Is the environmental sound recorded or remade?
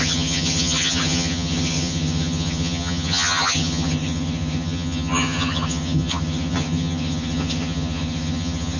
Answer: remade